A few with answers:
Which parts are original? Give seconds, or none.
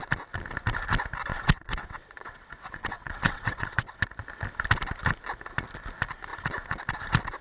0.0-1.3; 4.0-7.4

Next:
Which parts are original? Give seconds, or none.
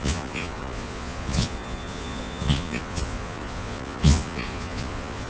none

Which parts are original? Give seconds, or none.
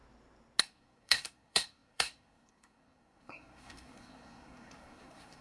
0.0-0.6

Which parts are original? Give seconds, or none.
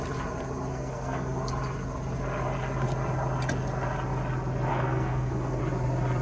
0.0-0.7; 1.5-4.7; 5.6-6.2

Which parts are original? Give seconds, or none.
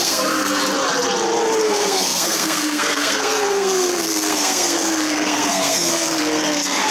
0.6-1.6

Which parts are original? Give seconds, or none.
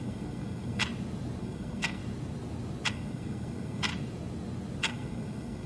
0.8-1.4; 2.0-2.9; 3.9-4.8